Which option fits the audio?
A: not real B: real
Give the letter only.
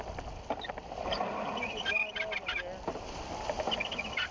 B